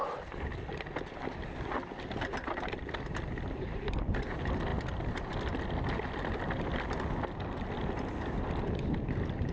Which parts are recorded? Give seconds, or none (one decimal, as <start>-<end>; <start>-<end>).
0.0-9.5